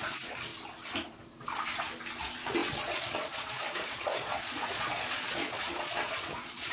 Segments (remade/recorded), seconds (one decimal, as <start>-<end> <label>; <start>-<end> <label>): 0.0-0.5 remade; 0.5-2.2 recorded; 2.2-6.7 remade

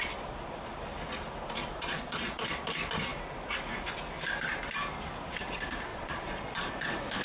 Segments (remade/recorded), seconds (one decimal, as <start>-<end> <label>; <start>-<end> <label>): 0.0-1.6 recorded; 1.6-2.5 remade; 2.5-5.9 recorded; 5.9-6.7 remade; 6.7-7.2 recorded

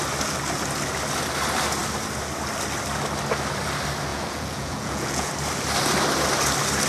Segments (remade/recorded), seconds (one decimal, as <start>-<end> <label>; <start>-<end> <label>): 0.0-4.1 recorded; 4.1-5.3 remade; 5.3-6.9 recorded

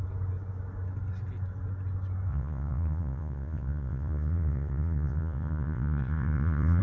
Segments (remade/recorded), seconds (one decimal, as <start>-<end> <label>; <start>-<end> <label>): 0.0-2.3 recorded; 2.3-6.8 remade